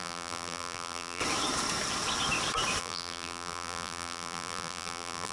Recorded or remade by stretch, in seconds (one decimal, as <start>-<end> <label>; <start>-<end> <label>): 0.0-1.2 remade; 1.2-2.8 recorded; 2.8-5.3 remade

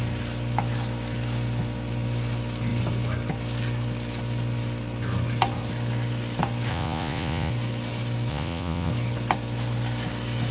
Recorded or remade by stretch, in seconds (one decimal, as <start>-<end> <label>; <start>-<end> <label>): 0.0-6.7 recorded; 6.7-7.5 remade; 7.5-8.3 recorded; 8.3-8.9 remade; 8.9-10.5 recorded

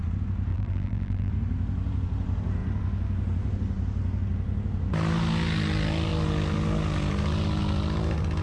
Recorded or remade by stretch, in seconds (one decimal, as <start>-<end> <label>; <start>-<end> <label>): 0.0-0.5 recorded; 0.5-1.3 remade; 1.3-8.4 recorded

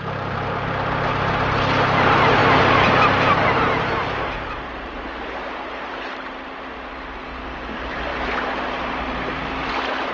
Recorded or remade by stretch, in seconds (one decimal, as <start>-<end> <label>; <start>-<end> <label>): 0.0-10.1 recorded

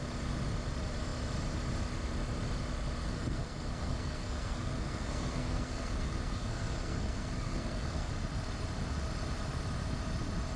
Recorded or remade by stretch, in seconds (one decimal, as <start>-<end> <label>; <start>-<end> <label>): 0.0-3.0 recorded; 3.0-8.1 remade; 8.1-10.6 recorded